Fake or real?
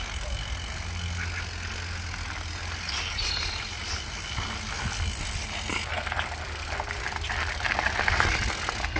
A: real